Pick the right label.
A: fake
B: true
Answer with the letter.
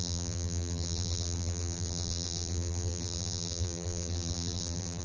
A